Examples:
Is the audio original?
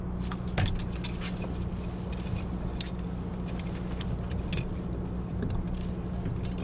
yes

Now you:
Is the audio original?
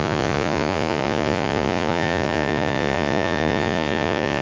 no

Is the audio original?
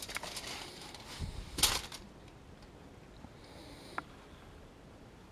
yes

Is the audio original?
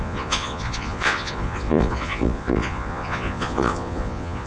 no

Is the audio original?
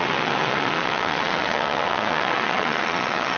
no